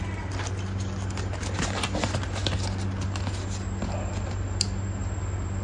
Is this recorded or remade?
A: recorded